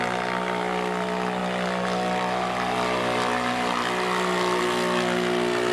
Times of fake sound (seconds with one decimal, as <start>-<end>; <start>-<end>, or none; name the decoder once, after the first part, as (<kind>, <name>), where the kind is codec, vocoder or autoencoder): none